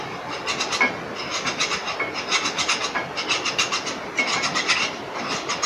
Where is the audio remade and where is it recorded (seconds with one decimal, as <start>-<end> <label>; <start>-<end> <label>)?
0.0-5.7 recorded